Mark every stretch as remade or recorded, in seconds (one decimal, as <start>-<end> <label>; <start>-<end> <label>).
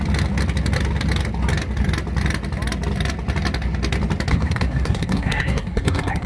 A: 0.0-4.3 recorded; 4.3-6.3 remade